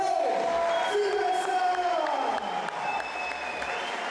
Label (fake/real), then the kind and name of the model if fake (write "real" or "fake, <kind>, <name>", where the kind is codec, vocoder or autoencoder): real